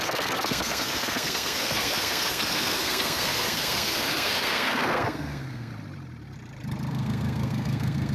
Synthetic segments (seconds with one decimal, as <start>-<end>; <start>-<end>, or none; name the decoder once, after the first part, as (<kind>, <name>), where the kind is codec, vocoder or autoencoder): 0.0-5.7 (codec, SNAC); 6.9-8.1